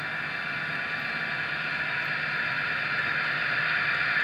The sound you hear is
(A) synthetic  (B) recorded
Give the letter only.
B